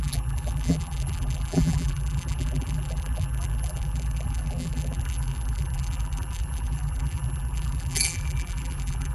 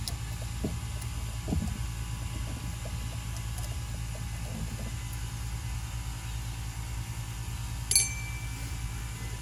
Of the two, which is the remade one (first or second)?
first